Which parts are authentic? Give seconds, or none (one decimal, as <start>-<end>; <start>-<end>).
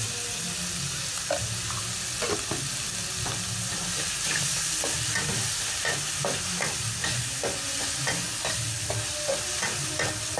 0.0-7.0; 8.3-10.4